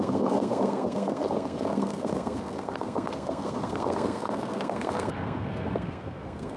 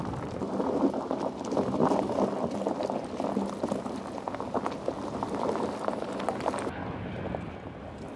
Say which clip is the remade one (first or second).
first